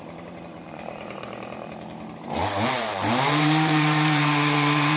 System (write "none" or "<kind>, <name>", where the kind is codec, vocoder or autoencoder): vocoder, BigVGAN v2